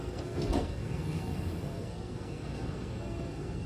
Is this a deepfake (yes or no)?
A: yes